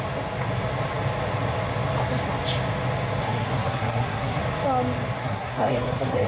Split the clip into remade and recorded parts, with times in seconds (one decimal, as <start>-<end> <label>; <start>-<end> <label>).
0.0-3.2 recorded; 3.2-4.4 remade; 4.4-5.2 recorded; 5.2-6.3 remade